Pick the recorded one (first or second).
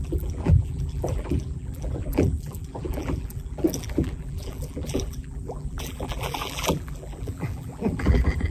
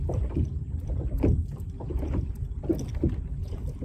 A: second